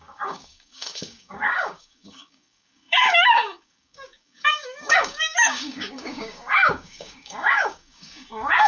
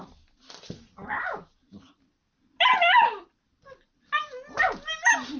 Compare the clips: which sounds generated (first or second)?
first